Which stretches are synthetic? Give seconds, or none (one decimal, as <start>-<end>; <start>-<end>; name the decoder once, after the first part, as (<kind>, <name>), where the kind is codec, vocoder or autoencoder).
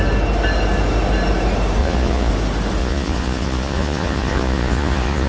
1.8-2.3 (vocoder, Vocos); 2.8-5.3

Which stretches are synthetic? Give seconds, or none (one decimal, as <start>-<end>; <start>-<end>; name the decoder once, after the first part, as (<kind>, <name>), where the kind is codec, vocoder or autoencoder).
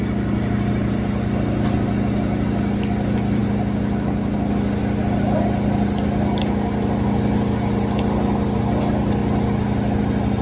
none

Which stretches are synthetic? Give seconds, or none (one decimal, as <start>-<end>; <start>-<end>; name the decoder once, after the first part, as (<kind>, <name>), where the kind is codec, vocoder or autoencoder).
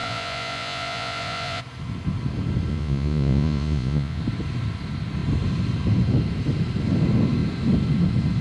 0.0-1.6 (vocoder, Vocos); 2.7-4.2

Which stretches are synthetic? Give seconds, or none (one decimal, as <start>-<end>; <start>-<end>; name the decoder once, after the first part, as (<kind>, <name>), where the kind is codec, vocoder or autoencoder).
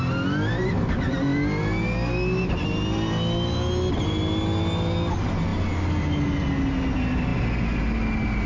none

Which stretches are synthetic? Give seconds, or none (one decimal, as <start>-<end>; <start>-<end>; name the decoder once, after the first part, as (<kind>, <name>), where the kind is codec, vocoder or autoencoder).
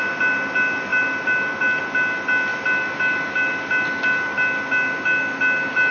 none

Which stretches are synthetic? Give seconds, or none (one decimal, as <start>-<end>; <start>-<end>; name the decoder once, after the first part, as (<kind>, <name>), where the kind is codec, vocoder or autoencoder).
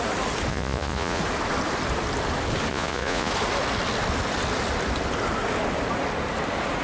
0.5-1.2 (vocoder, Vocos); 2.7-3.3